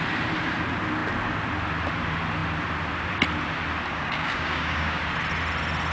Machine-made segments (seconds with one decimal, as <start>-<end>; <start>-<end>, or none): 3.9-5.0